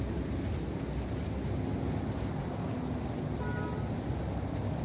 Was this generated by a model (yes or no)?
no